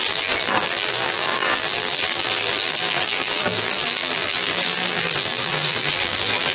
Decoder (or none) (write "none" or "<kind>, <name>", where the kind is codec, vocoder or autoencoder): vocoder, BigVGAN v2